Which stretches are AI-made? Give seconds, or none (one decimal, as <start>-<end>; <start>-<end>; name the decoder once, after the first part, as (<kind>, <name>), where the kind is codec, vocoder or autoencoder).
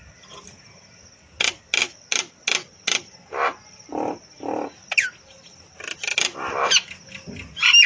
none